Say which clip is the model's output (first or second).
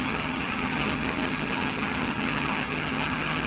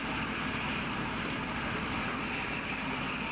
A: first